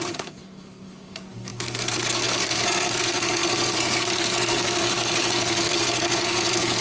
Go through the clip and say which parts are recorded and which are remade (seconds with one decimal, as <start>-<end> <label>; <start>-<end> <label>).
0.0-6.8 remade